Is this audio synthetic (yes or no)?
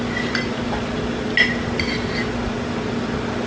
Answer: no